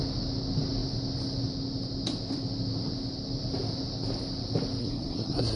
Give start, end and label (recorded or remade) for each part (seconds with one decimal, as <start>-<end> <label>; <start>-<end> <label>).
0.0-4.8 recorded; 4.8-5.6 remade